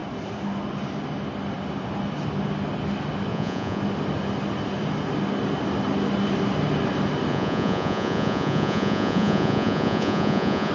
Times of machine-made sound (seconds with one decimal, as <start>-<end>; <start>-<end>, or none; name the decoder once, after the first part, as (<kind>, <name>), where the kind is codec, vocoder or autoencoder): 3.3-3.8 (vocoder, Vocos); 7.3-10.7